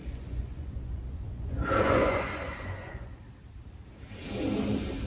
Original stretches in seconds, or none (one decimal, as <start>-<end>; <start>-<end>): 3.1-5.1